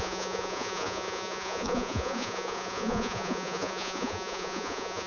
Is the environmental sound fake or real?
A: fake